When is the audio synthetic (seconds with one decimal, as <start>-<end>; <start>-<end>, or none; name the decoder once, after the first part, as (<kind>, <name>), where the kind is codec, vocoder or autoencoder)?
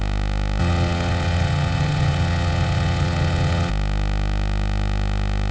0.6-3.7 (vocoder, HiFi-GAN)